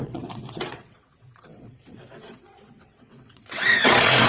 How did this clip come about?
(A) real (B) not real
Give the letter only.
B